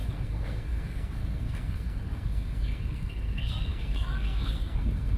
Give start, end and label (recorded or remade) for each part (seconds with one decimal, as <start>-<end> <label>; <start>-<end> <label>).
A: 0.0-5.2 remade